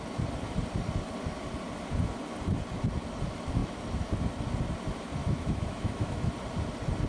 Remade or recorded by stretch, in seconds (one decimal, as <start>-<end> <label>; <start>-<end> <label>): 0.0-5.2 recorded; 5.2-6.3 remade; 6.3-7.1 recorded